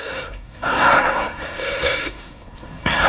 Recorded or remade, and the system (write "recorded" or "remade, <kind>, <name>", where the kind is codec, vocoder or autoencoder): remade, codec, SNAC